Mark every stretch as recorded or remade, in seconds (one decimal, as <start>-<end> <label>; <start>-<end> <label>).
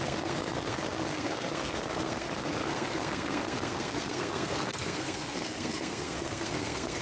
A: 0.0-7.0 remade